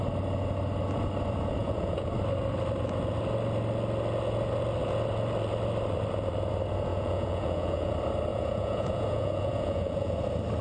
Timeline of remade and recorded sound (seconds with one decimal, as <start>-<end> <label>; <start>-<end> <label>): 0.0-1.6 recorded; 1.6-2.1 remade; 2.1-6.9 recorded; 6.9-7.9 remade; 7.9-8.3 recorded; 8.3-10.2 remade; 10.2-10.6 recorded